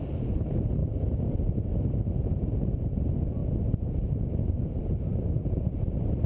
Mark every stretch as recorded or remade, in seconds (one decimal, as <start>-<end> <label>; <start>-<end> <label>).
0.0-3.4 remade; 3.4-4.8 recorded; 4.8-6.3 remade